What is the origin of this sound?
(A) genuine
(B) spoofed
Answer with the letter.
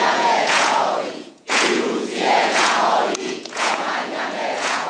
B